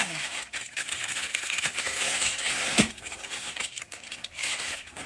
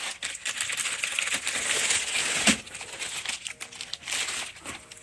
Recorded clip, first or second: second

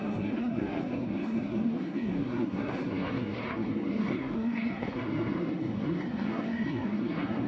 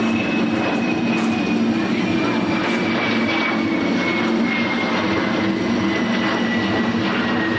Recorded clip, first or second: second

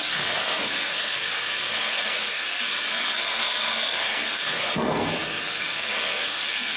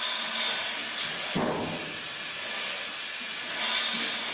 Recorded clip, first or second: second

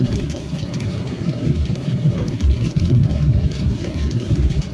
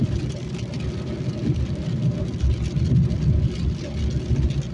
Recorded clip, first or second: second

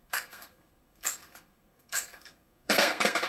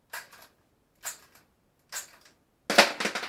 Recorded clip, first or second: second